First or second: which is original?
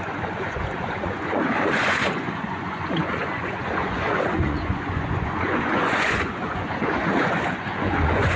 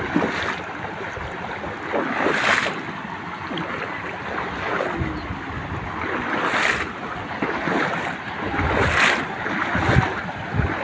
second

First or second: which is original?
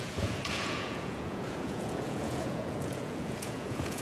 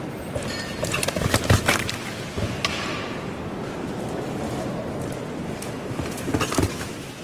second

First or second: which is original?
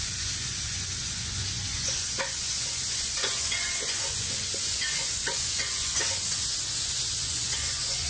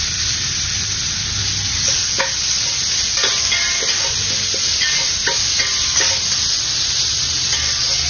second